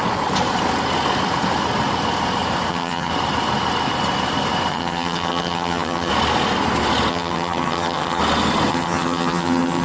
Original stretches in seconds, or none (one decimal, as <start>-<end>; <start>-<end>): 0.0-2.7; 3.1-4.7; 6.1-7.1; 8.2-8.7